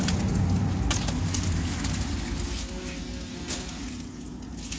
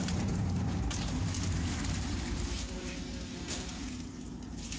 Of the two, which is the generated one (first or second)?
second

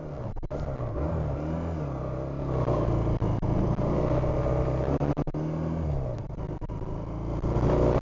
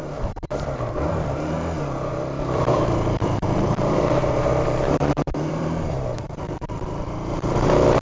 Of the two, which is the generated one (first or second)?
second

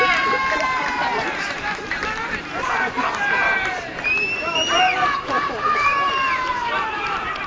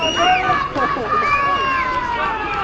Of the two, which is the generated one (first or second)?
first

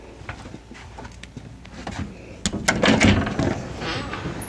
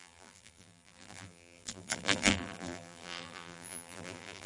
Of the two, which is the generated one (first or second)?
second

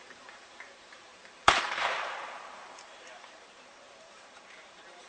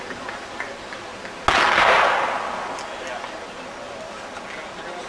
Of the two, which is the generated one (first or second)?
first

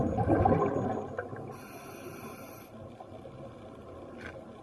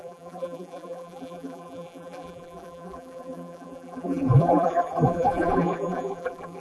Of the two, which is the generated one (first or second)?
second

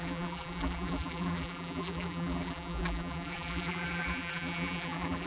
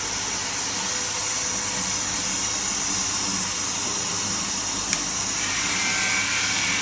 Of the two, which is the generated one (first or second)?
first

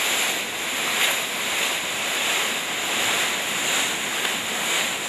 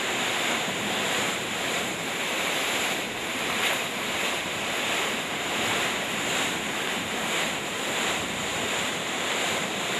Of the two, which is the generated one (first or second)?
second